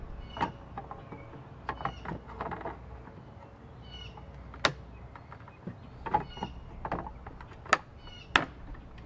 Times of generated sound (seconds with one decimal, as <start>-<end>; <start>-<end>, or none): none